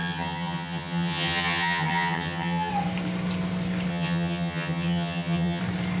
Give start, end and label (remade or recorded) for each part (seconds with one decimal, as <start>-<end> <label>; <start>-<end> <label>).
0.0-2.7 remade; 2.7-3.9 recorded; 3.9-5.6 remade; 5.6-6.0 recorded